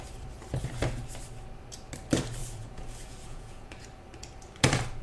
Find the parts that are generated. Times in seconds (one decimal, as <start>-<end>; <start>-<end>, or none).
2.4-3.7